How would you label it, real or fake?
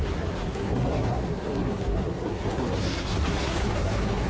fake